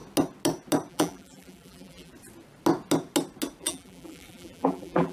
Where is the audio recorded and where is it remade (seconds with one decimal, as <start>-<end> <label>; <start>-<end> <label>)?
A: 0.0-0.9 recorded; 0.9-2.1 remade; 2.1-3.6 recorded; 3.6-5.1 remade